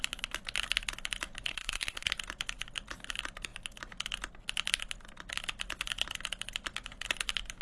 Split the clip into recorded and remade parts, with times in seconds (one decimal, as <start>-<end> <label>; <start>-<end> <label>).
0.0-1.5 recorded; 1.5-2.1 remade; 2.1-7.6 recorded